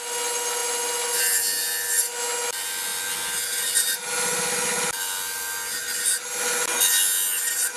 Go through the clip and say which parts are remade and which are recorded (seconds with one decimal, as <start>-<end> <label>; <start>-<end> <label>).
0.0-7.8 recorded